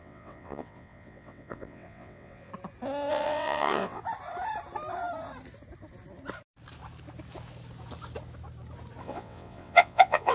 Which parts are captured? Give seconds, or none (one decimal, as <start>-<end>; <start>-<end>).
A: 2.5-3.1; 4.0-9.0